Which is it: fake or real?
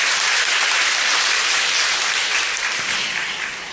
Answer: real